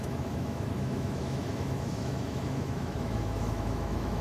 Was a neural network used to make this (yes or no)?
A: yes